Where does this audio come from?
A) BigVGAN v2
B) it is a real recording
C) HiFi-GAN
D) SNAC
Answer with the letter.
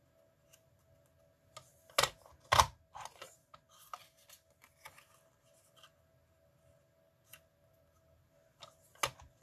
B